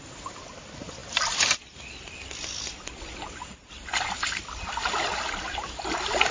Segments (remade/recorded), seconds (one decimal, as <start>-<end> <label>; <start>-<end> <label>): 0.0-6.3 recorded